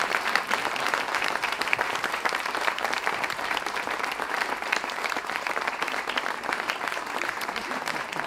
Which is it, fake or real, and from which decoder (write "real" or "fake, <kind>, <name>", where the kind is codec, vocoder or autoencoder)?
fake, vocoder, BigVGAN v2